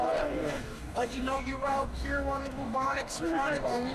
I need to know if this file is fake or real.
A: fake